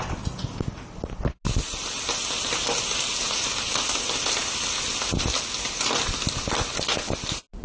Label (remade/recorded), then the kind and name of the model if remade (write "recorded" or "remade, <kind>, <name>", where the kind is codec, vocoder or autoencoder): recorded